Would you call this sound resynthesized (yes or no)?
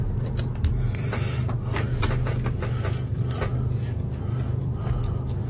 yes